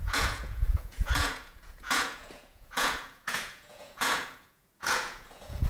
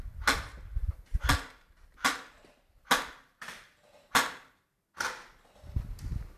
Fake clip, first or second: first